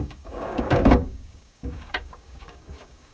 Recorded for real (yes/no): no